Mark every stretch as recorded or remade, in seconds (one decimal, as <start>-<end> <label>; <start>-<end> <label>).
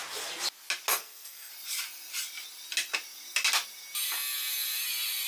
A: 0.0-0.9 recorded; 0.9-1.5 remade; 1.5-5.3 recorded